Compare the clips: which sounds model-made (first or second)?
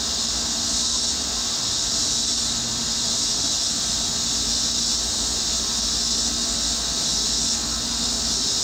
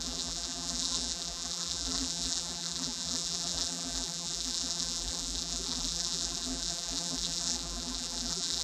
second